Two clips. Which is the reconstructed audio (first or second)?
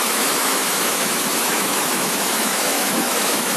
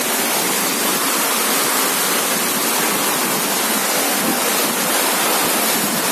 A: first